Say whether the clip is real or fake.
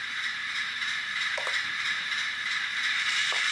fake